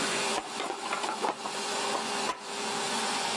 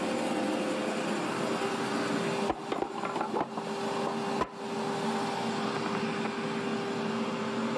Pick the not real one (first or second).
first